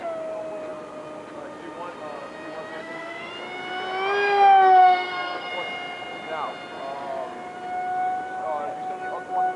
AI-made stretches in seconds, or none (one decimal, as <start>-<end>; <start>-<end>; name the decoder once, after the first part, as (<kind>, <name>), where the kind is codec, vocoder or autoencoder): 2.7-3.3 (codec, SNAC); 4.8-5.5

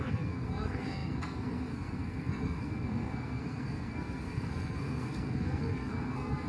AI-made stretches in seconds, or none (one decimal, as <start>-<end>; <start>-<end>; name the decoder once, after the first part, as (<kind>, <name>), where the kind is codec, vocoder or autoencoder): 0.0-6.5 (codec, SNAC)

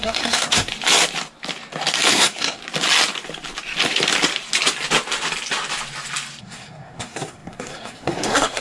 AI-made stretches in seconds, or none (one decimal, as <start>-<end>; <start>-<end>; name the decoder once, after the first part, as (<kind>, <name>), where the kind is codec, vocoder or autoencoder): 0.0-0.7 (codec, SNAC); 2.1-2.6; 6.4-8.6

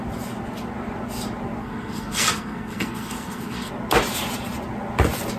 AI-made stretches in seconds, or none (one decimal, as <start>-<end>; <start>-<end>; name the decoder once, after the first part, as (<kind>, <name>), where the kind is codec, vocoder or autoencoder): 1.6-3.7 (codec, SNAC)